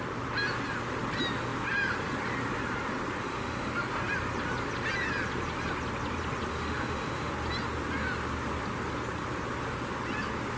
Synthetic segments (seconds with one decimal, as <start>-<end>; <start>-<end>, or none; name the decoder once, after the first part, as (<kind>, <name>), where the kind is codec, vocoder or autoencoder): 3.2-3.7 (autoencoder, DAC-VAE); 6.5-7.3